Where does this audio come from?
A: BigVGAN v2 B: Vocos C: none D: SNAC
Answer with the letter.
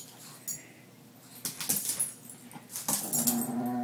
C